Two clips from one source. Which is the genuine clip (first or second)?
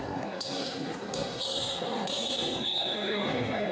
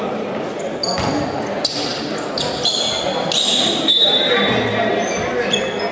second